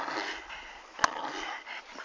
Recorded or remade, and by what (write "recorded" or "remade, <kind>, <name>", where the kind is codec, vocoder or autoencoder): recorded